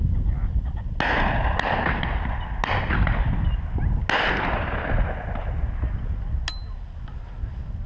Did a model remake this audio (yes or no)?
no